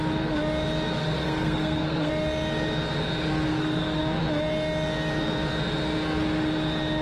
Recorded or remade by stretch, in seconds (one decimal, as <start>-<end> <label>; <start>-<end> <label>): 0.0-1.0 recorded; 1.0-2.1 remade; 2.1-3.5 recorded; 3.5-4.0 remade; 4.0-7.0 recorded

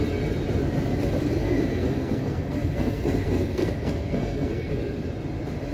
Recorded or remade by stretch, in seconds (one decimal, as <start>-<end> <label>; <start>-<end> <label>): 0.0-1.4 recorded; 1.4-4.8 remade; 4.8-5.7 recorded